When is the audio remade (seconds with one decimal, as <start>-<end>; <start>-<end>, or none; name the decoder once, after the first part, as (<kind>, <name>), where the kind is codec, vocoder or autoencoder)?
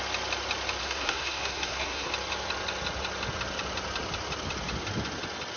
0.8-2.1 (codec, SNAC)